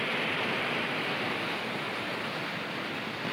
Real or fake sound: real